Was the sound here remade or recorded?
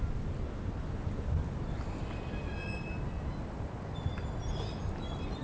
recorded